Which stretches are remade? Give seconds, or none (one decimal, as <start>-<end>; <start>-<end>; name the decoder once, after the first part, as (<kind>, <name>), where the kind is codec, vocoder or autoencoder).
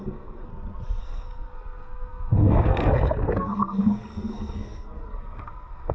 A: 0.0-0.5 (codec, SNAC); 1.0-5.9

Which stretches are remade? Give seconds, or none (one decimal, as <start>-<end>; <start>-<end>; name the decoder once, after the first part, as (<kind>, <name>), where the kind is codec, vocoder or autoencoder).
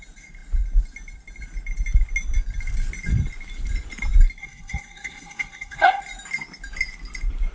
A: 4.4-6.0 (codec, SNAC)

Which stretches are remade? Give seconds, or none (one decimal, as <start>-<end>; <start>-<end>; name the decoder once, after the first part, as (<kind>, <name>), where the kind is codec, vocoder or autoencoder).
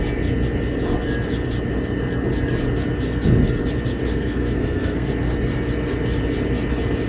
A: 4.1-5.1 (codec, SNAC)